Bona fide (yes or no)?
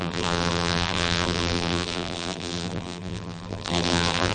no